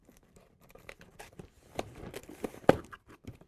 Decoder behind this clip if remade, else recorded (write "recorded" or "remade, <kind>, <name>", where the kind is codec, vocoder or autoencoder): remade, vocoder, BigVGAN v2